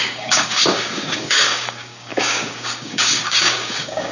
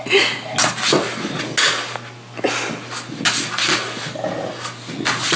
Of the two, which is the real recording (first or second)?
second